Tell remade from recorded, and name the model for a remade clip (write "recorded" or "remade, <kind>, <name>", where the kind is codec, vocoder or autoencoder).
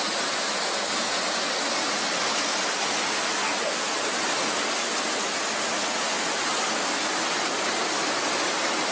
recorded